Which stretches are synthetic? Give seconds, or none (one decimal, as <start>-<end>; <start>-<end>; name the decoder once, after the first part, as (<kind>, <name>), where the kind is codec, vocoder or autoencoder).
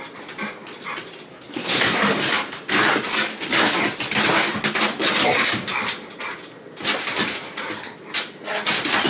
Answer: 1.3-2.0 (codec, SNAC)